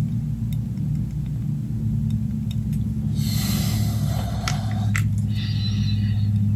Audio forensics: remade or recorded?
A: recorded